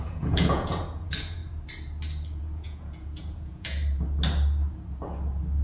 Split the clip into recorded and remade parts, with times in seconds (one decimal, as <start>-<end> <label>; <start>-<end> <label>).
0.0-1.4 remade; 1.4-2.4 recorded; 2.4-3.8 remade; 3.8-5.6 recorded